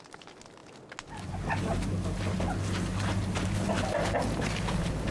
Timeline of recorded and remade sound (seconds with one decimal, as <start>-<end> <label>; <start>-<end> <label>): 0.0-5.1 recorded